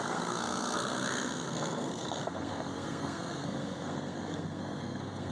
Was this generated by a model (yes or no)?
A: yes